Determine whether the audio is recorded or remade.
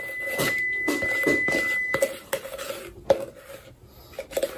recorded